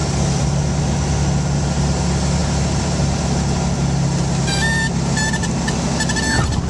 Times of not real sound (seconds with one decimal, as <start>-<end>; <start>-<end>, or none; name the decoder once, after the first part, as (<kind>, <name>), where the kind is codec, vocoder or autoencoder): none